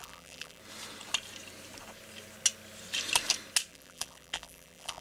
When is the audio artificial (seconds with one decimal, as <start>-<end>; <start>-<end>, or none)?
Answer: 0.0-0.6; 3.7-5.0